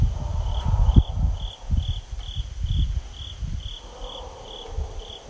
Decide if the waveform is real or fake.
real